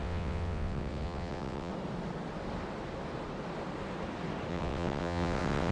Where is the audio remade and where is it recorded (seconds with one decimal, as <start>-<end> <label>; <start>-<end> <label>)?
0.0-1.7 remade; 1.7-4.5 recorded; 4.5-5.7 remade